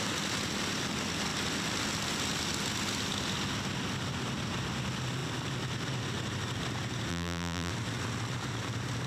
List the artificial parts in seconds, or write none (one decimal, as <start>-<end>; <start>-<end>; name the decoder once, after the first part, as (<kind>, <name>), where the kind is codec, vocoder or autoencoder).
7.1-7.7 (vocoder, BigVGAN v2)